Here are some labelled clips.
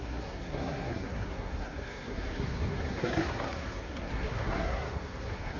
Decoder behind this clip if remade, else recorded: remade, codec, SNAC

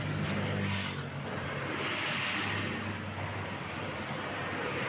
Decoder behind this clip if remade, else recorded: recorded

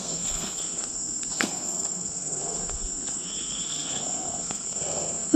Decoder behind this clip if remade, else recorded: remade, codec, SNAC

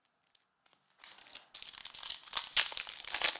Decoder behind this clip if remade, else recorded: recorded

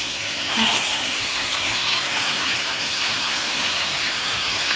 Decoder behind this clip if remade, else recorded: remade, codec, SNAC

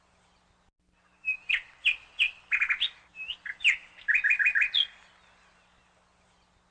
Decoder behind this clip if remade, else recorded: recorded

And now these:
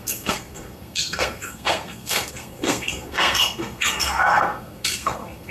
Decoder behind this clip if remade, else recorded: remade, codec, SNAC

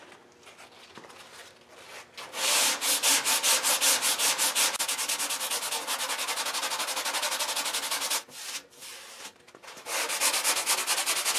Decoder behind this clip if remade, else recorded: recorded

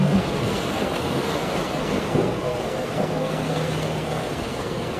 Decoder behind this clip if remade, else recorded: remade, codec, SNAC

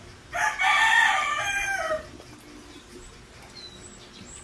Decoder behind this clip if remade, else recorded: recorded